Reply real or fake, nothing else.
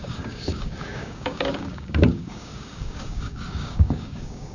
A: fake